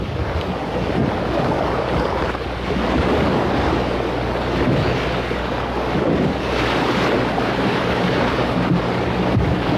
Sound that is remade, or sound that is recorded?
remade